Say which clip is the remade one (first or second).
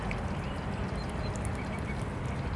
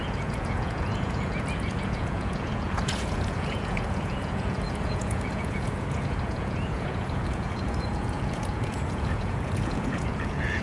second